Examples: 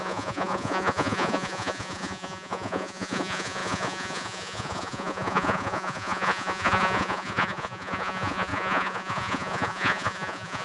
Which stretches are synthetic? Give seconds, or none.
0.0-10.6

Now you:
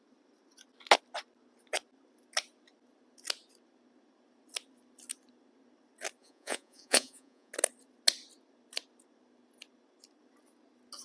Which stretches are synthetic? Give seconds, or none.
6.2-7.5